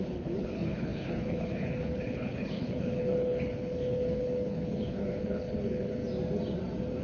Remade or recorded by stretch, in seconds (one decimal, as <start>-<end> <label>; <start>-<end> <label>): 0.0-6.0 remade; 6.0-7.0 recorded